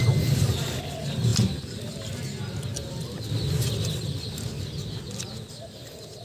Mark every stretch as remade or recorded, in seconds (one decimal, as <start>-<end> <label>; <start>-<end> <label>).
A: 0.0-6.2 recorded